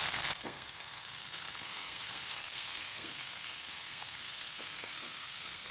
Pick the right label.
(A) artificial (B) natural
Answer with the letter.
A